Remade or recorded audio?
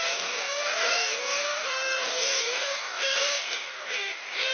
remade